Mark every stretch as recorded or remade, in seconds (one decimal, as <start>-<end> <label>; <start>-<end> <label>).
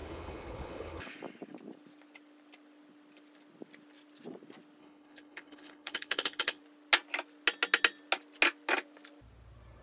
0.0-1.1 remade; 1.1-4.8 recorded; 4.8-6.6 remade; 6.6-9.8 recorded